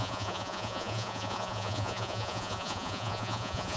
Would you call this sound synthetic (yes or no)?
yes